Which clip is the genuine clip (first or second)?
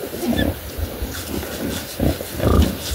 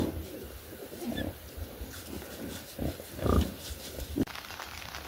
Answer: first